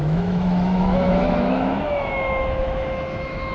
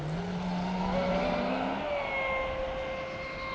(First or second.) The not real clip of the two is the first